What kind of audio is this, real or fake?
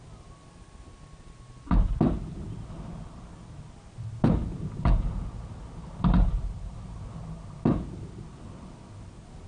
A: real